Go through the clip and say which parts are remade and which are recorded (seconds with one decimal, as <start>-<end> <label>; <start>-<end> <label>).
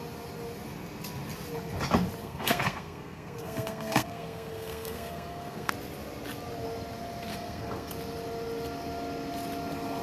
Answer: 0.0-2.2 recorded; 2.2-5.7 remade; 5.7-7.3 recorded; 7.3-7.9 remade; 7.9-10.0 recorded